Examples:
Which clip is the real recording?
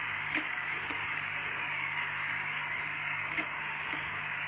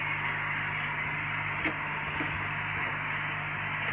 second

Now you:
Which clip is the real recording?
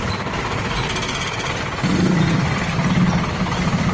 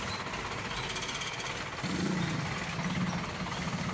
second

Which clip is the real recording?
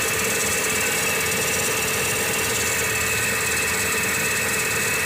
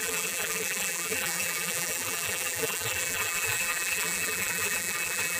first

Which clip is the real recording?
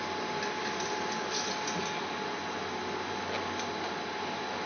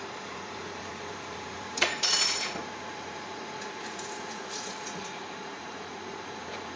first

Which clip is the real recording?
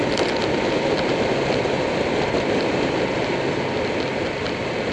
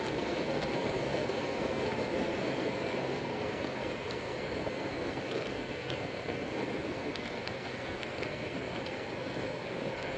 first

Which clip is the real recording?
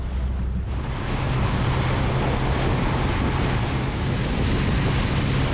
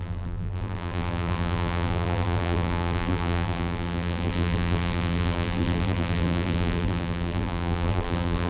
first